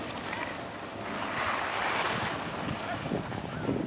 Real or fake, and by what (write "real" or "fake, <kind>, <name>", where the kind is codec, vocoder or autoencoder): real